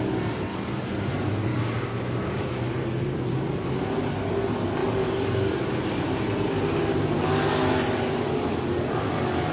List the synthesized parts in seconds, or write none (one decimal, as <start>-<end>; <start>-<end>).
1.5-2.5